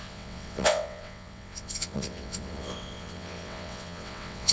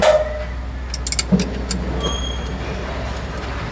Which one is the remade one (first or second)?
first